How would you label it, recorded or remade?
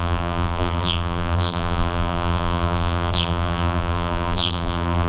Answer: remade